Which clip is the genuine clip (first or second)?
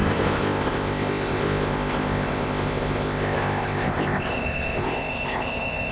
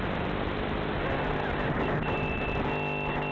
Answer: second